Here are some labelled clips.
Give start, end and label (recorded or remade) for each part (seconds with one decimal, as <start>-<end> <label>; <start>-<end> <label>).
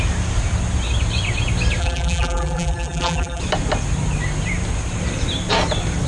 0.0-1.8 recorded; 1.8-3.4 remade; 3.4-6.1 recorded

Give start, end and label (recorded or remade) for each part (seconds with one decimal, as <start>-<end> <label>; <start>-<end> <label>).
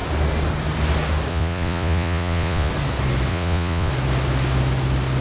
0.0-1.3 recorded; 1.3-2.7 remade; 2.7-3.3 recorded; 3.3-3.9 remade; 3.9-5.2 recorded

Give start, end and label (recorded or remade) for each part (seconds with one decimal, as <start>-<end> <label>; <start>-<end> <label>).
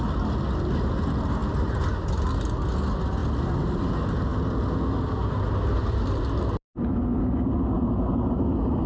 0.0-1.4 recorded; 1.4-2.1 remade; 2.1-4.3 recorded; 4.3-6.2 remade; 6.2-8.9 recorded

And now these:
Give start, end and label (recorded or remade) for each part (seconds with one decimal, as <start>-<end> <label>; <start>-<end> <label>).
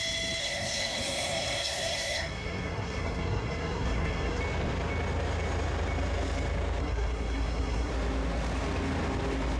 0.0-0.4 recorded; 0.4-4.4 remade; 4.4-6.8 recorded; 6.8-7.9 remade; 7.9-9.6 recorded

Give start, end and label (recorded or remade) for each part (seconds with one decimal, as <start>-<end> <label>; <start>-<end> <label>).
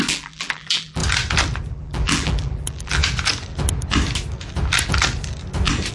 0.0-1.0 remade; 1.0-1.7 recorded; 1.7-3.0 remade; 3.0-5.9 recorded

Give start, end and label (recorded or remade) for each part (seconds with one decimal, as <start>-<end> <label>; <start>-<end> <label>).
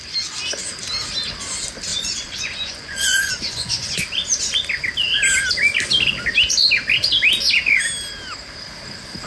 0.0-1.9 recorded; 1.9-4.0 remade; 4.0-9.3 recorded